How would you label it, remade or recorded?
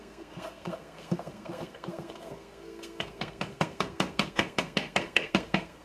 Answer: remade